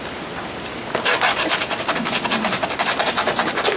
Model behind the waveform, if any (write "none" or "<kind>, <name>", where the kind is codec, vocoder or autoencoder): none